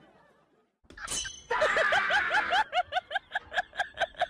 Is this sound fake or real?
real